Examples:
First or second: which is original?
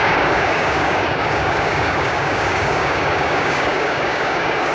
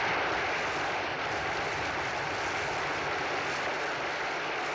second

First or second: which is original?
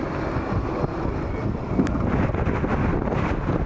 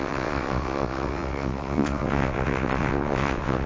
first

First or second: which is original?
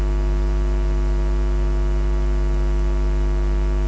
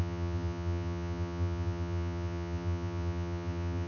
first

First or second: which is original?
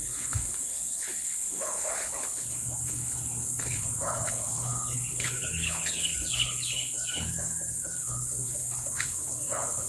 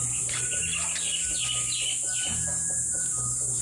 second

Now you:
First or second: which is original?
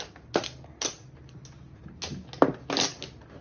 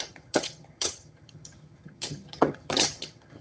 first